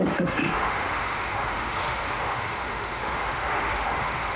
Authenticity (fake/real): fake